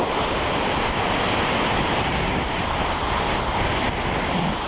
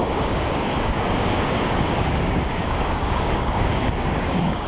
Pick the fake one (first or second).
second